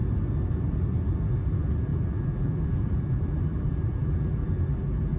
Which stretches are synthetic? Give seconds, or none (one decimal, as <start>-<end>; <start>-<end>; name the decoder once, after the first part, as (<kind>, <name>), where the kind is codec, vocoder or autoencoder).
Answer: 0.9-5.2 (vocoder, BigVGAN v2)